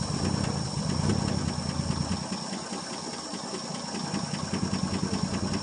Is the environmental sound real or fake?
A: real